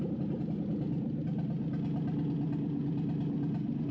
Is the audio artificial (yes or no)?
no